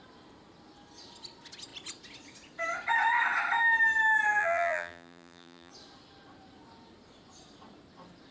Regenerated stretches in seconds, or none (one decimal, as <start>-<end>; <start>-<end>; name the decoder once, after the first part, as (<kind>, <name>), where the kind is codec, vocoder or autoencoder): 4.4-5.7 (vocoder, BigVGAN v2)